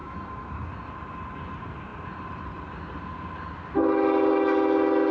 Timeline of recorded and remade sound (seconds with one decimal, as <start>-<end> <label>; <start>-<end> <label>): 0.0-0.7 remade; 0.7-5.1 recorded